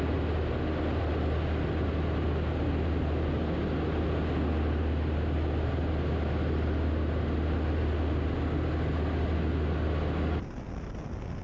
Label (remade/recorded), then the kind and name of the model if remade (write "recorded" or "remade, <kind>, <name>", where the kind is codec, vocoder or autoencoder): recorded